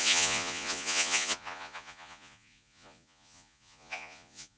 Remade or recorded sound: remade